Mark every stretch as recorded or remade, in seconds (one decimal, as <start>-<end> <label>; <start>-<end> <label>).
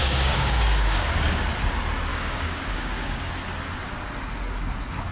0.0-1.4 remade; 1.4-2.1 recorded; 2.1-3.3 remade; 3.3-5.1 recorded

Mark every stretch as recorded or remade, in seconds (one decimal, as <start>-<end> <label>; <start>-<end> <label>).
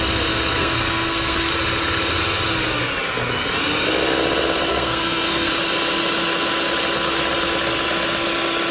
0.0-0.6 recorded; 0.6-1.5 remade; 1.5-4.7 recorded; 4.7-5.5 remade; 5.5-8.7 recorded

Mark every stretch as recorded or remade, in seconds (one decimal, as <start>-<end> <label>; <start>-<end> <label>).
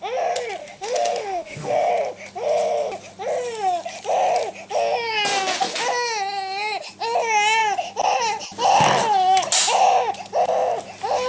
0.0-0.6 recorded; 0.6-1.9 remade; 1.9-11.3 recorded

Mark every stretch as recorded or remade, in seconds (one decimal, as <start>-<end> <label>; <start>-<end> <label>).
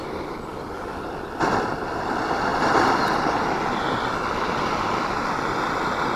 0.0-6.2 recorded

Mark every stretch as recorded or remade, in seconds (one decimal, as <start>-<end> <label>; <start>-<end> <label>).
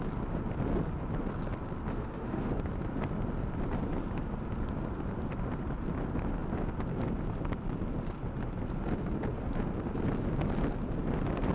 0.0-1.9 recorded; 1.9-2.5 remade; 2.5-11.5 recorded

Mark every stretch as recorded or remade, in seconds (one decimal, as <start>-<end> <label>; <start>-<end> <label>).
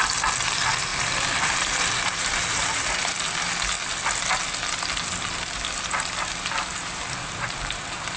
0.0-0.9 recorded; 0.9-2.9 remade; 2.9-6.7 recorded; 6.7-8.2 remade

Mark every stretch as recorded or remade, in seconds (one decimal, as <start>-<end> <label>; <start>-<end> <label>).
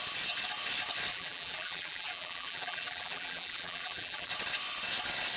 0.0-1.1 recorded; 1.1-4.3 remade; 4.3-5.4 recorded